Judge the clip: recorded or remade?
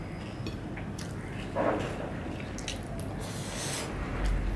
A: recorded